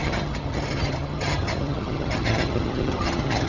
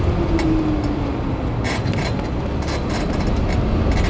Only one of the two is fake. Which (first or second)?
first